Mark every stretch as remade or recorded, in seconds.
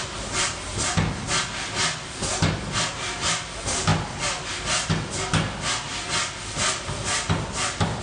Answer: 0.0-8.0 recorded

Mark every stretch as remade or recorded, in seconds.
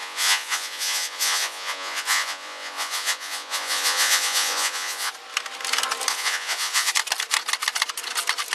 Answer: 0.0-5.1 remade; 5.1-6.1 recorded; 6.1-6.9 remade; 6.9-8.5 recorded